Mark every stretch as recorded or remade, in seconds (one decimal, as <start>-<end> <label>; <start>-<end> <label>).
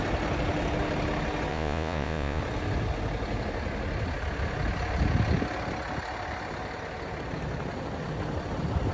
0.0-1.5 recorded; 1.5-2.4 remade; 2.4-8.9 recorded